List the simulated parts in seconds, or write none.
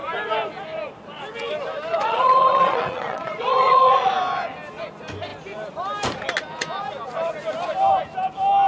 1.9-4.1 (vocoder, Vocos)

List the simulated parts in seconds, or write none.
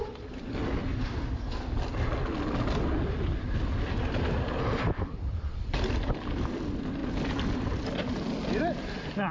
none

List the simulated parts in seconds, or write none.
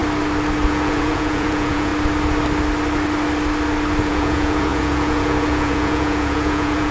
0.7-1.9 (vocoder, Vocos); 4.0-6.9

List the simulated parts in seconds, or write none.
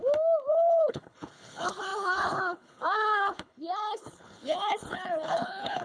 0.5-5.8 (codec, HILCodec)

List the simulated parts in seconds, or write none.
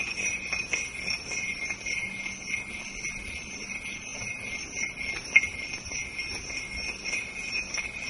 none